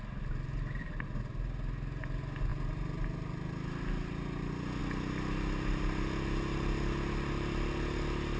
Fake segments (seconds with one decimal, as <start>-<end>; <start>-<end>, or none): none